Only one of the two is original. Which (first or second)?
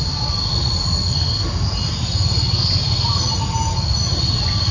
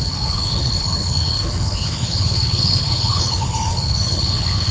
first